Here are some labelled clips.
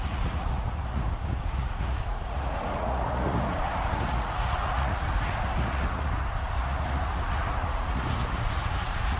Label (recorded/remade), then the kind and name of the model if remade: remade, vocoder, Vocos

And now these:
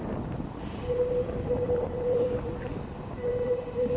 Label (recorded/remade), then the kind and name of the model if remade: remade, vocoder, BigVGAN v2